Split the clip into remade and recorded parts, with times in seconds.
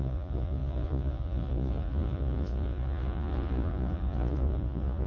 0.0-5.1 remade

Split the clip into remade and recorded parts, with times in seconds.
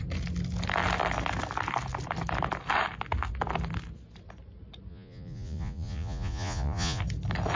0.0-4.9 recorded; 4.9-7.0 remade; 7.0-7.5 recorded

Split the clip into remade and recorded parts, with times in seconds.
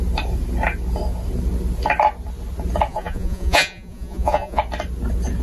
0.0-2.9 recorded; 2.9-4.6 remade; 4.6-5.4 recorded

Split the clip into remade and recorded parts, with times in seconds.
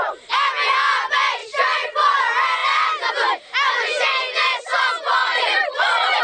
0.0-1.4 recorded; 1.4-2.2 remade; 2.2-5.2 recorded; 5.2-6.2 remade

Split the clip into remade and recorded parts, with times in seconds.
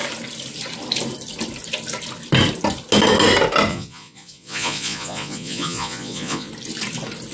0.0-3.7 recorded; 3.7-6.5 remade; 6.5-7.3 recorded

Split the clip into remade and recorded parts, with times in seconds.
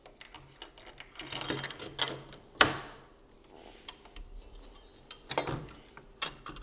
0.0-6.6 recorded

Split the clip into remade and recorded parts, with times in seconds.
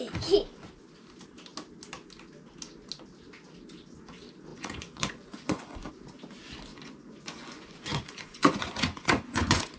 0.0-4.5 recorded; 4.5-5.9 remade; 5.9-6.7 recorded; 6.7-9.8 remade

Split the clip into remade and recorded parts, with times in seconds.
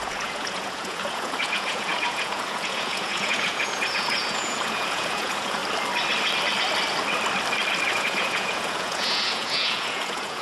0.0-5.6 remade; 5.6-7.9 recorded; 7.9-10.4 remade